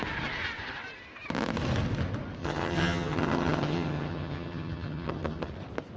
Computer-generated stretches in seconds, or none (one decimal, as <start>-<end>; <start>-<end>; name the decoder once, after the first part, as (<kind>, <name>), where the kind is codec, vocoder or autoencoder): 2.4-5.5 (vocoder, HiFi-GAN)